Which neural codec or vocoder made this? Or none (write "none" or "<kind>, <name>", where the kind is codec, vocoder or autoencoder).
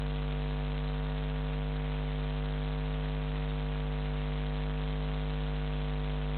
none